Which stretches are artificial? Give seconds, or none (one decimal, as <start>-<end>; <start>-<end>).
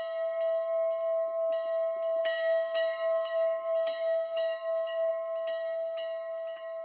2.2-5.1